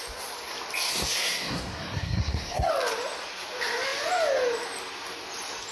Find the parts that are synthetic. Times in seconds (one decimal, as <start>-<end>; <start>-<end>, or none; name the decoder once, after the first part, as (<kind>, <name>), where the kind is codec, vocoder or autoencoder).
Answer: 0.9-2.7 (codec, SNAC)